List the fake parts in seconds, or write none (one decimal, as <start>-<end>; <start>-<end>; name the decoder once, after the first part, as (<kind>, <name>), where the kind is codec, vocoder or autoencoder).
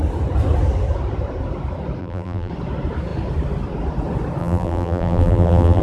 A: 2.0-2.5 (vocoder, BigVGAN v2); 4.4-5.8